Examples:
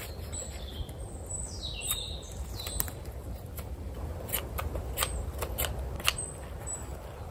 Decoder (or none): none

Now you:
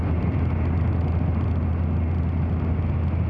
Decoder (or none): none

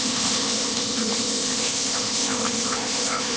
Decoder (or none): codec, ZipCodec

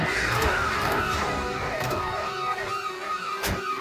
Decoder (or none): codec, DAC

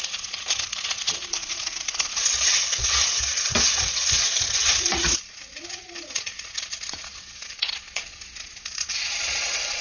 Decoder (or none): vocoder, Vocos